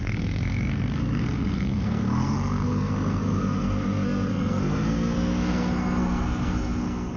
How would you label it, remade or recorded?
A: remade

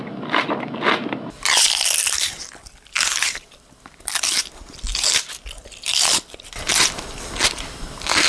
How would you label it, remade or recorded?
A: recorded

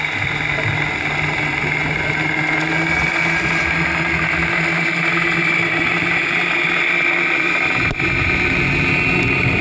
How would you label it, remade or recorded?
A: recorded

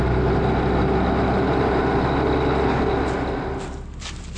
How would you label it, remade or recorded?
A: recorded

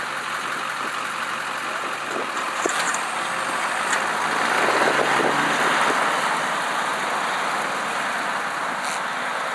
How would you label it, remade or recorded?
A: recorded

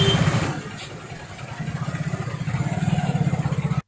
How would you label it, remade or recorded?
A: recorded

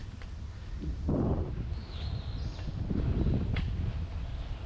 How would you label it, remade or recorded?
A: recorded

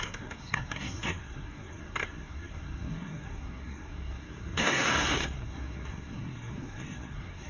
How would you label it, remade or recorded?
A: remade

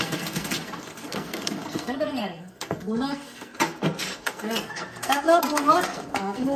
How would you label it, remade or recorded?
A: remade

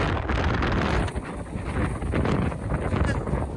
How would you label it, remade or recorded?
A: recorded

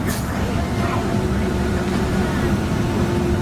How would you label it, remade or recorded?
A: recorded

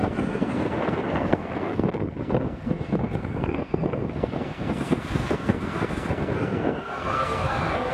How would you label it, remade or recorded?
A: remade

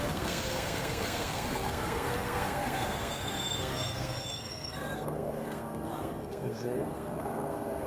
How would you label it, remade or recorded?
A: remade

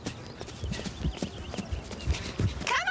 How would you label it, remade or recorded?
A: recorded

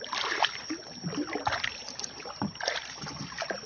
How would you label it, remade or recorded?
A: recorded